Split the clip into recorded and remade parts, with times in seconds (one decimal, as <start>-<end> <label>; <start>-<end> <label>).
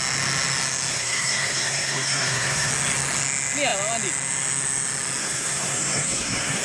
0.0-0.9 recorded; 0.9-2.7 remade; 2.7-5.2 recorded; 5.2-6.6 remade